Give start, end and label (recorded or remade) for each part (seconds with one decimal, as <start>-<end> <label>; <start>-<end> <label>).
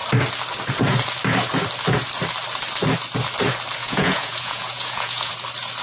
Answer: 0.0-3.8 recorded; 3.8-5.3 remade; 5.3-5.8 recorded